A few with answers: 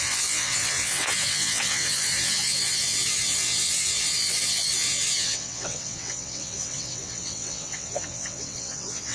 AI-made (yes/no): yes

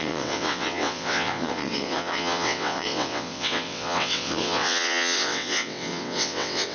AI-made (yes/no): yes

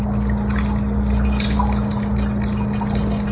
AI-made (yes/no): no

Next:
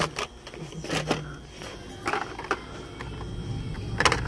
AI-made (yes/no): no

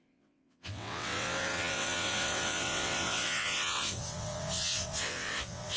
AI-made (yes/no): yes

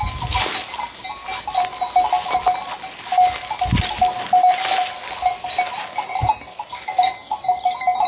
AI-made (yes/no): no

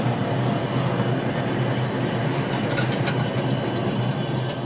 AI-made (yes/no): no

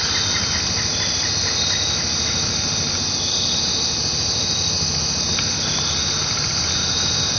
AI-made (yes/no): no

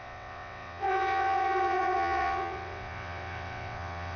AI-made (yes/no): yes